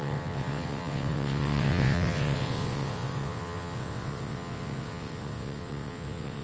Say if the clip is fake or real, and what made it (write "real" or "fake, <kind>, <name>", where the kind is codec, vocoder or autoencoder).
fake, vocoder, WaveNeXt